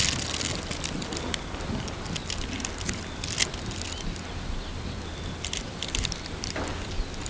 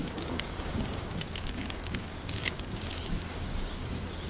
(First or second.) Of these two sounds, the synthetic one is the second